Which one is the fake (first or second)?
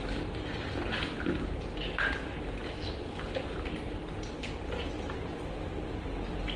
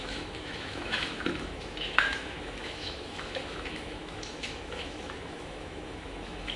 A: second